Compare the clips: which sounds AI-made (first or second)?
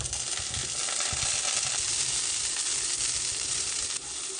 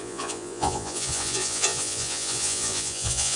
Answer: second